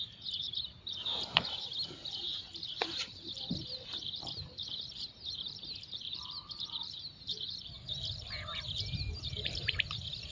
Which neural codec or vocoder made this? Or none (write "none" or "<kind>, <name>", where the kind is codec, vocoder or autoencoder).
vocoder, BigVGAN v2